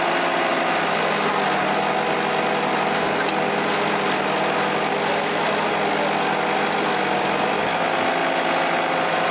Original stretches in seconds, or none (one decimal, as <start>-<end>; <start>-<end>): 0.0-9.3